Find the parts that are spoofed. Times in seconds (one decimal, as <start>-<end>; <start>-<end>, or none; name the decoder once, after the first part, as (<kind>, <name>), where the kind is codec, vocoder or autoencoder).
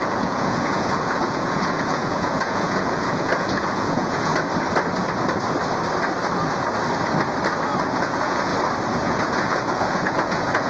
0.0-4.3 (vocoder, Vocos); 7.8-8.5; 9.0-10.7